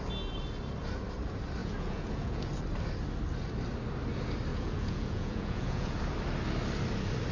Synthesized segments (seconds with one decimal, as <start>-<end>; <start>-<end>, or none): 1.6-2.5; 4.5-6.0